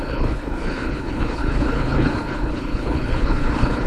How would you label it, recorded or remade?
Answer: remade